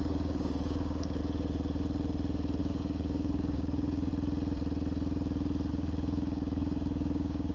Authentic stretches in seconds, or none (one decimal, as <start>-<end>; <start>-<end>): 1.2-2.6; 4.1-5.7